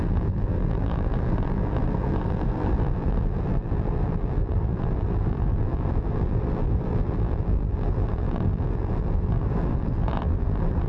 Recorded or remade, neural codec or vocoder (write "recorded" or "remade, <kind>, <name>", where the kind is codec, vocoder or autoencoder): remade, vocoder, BigVGAN v2